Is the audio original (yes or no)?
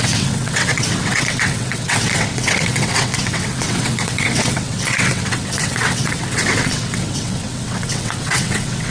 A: no